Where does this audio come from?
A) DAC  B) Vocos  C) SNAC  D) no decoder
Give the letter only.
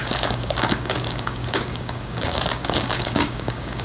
A